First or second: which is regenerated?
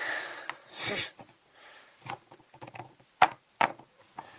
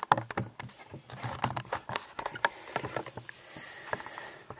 first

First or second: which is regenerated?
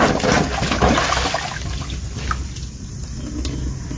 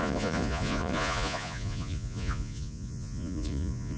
second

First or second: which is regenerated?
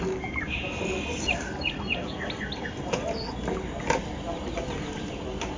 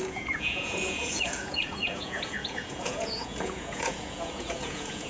second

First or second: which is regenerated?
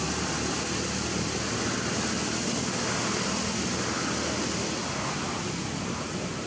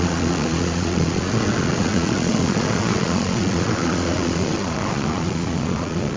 second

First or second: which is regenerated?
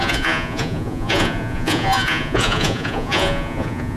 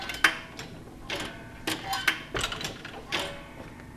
first